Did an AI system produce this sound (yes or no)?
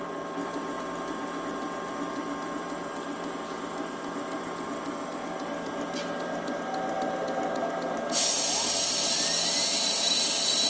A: no